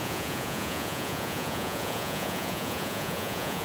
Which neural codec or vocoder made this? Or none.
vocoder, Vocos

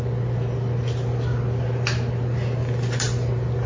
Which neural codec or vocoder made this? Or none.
none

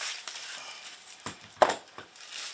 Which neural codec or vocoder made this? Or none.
vocoder, BigVGAN v2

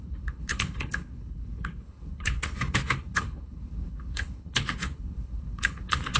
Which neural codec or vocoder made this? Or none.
codec, HILCodec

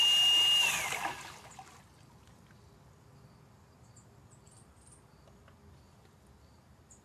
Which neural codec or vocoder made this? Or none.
none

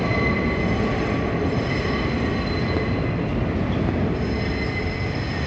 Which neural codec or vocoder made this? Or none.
none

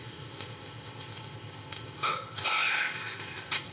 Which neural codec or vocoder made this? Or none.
codec, ZipCodec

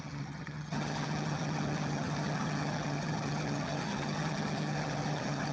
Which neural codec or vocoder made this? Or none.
vocoder, HiFi-GAN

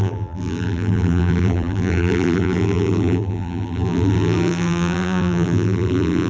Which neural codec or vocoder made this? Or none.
vocoder, BigVGAN v2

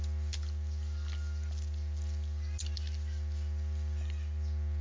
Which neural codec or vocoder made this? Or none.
none